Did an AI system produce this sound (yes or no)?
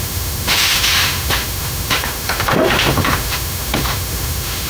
yes